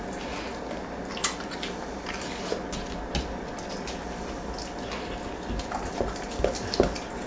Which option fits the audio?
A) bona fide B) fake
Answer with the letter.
A